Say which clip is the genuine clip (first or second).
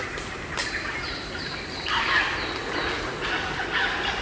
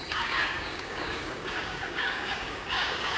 first